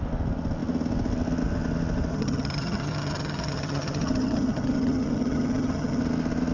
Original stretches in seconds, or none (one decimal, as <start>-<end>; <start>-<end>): 0.0-2.1; 6.0-6.5